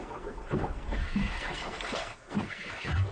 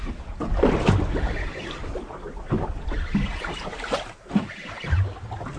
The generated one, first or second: first